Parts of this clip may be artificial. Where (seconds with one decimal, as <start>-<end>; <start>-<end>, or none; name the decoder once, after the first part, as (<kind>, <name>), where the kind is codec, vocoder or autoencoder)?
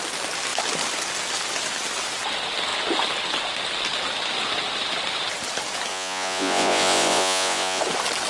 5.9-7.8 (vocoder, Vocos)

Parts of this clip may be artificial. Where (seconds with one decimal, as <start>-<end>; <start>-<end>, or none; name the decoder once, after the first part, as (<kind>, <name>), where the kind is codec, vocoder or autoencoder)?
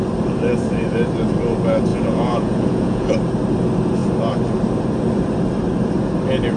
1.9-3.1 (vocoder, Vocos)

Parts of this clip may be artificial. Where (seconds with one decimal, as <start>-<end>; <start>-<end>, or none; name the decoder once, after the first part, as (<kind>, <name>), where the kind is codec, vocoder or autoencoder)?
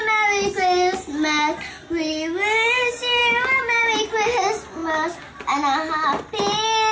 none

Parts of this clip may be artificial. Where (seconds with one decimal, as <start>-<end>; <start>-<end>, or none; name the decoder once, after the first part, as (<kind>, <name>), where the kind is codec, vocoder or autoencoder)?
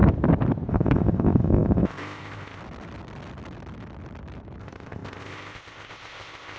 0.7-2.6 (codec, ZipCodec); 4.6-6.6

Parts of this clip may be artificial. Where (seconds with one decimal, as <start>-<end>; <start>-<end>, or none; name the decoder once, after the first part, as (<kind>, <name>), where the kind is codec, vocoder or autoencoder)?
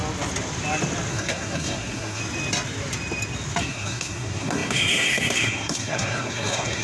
1.1-2.2 (codec, SNAC); 3.6-6.8